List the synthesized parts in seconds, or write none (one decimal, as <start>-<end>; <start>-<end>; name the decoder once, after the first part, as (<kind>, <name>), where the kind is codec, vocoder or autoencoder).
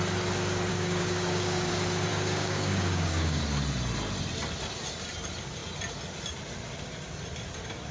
0.7-1.7 (codec, DAC); 2.1-3.4